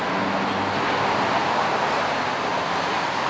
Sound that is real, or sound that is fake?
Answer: real